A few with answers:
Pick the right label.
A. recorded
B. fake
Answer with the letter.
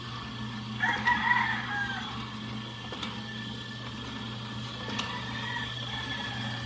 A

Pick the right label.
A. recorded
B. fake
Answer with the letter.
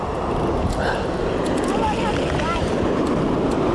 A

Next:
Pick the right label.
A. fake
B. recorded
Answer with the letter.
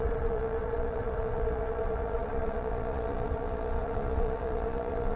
A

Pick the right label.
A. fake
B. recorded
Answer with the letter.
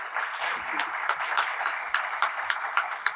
B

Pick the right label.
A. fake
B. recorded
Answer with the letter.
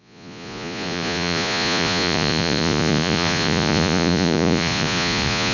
A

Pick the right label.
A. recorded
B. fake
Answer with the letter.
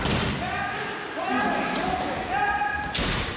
A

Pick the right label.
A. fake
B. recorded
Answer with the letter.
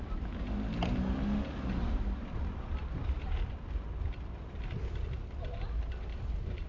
B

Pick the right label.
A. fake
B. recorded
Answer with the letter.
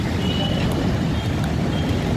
B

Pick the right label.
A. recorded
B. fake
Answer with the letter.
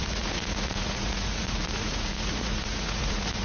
B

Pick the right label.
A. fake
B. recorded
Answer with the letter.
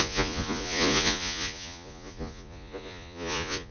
A